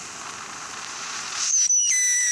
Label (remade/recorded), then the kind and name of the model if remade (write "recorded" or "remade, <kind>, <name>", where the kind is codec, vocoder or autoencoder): recorded